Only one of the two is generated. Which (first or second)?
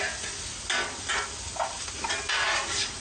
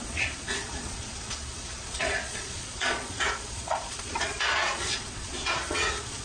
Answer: second